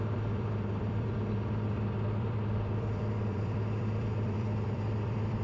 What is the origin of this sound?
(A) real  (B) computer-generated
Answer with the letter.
B